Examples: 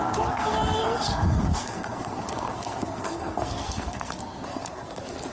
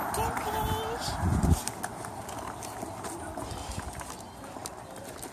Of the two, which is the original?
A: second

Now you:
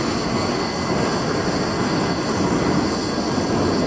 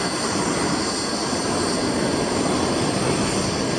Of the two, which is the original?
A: first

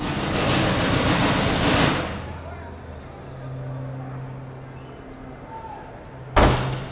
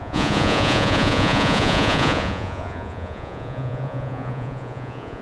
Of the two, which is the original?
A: first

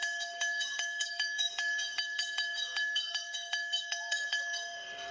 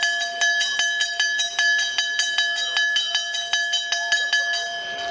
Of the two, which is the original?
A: second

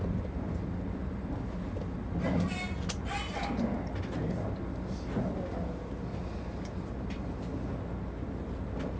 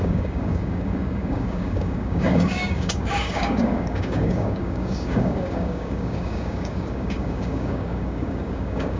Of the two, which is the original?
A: first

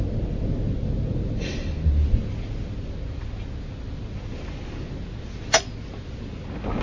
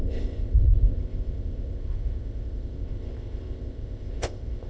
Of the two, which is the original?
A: first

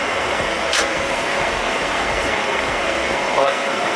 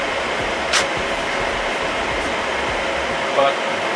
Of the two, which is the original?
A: second